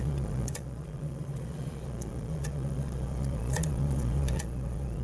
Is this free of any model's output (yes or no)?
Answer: no